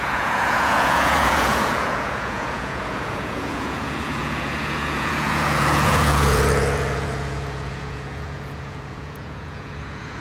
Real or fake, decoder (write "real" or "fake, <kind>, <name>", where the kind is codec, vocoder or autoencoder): fake, vocoder, Vocos